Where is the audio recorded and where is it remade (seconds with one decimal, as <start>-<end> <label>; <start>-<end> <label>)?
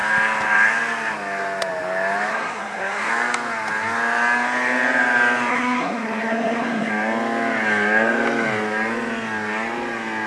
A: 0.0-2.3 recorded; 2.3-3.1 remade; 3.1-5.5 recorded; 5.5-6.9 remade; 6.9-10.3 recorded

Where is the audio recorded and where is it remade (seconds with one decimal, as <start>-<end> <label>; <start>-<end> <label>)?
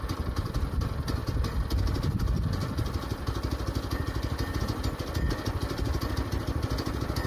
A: 0.0-7.3 recorded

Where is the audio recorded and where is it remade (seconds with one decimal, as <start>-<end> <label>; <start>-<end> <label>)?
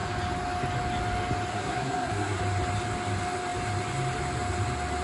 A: 0.0-1.5 recorded; 1.5-2.4 remade; 2.4-5.0 recorded